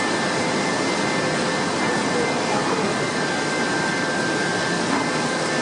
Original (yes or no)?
yes